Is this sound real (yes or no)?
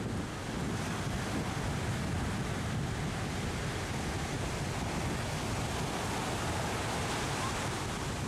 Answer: yes